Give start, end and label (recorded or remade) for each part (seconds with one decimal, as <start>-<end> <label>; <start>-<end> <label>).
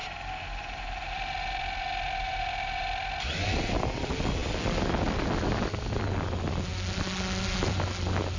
0.0-8.4 recorded